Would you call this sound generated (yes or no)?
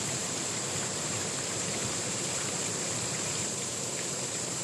yes